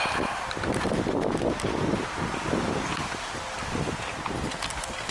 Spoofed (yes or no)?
no